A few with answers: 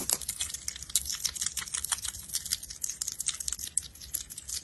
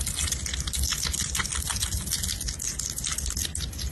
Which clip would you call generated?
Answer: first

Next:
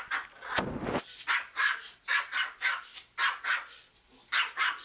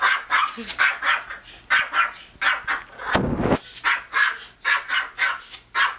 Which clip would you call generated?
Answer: first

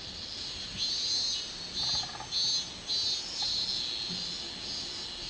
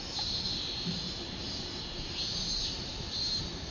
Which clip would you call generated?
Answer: second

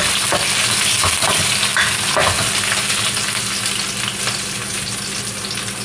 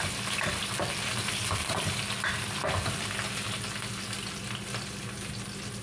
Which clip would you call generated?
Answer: second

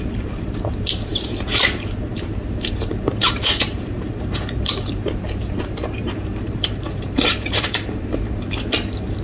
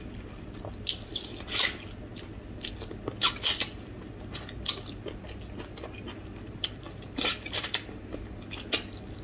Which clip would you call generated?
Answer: first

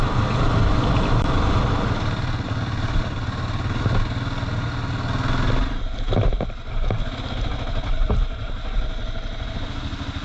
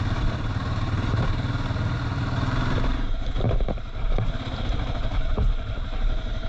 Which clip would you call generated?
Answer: second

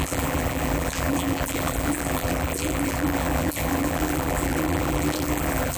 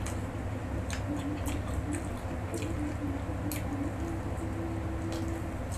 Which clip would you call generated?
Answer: first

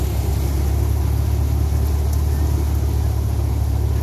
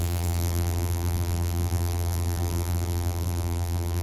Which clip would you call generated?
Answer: second